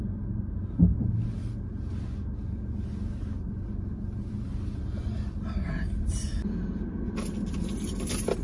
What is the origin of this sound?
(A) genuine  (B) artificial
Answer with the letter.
A